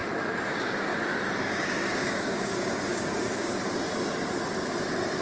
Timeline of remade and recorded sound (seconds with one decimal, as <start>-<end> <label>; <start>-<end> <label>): 0.0-0.5 recorded; 0.5-0.9 remade; 0.9-1.4 recorded; 1.4-3.5 remade; 3.5-5.2 recorded